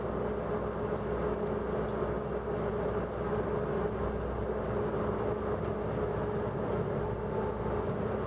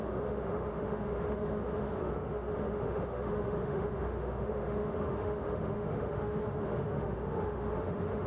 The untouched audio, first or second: first